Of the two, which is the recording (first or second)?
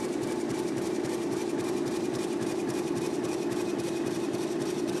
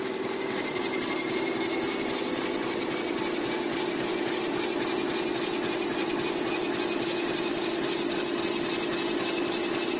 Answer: second